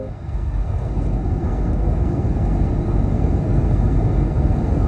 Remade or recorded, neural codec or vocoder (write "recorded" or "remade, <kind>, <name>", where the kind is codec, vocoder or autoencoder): remade, codec, SNAC